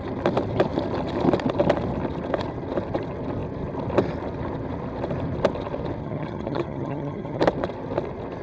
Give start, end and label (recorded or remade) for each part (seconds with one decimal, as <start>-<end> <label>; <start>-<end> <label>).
0.0-6.0 recorded; 6.0-7.4 remade; 7.4-8.4 recorded